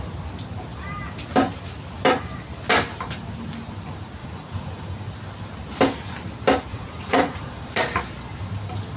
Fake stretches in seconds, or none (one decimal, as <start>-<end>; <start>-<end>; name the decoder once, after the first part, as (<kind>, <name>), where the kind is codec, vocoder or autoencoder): 4.2-5.1 (vocoder, Vocos); 6.7-7.7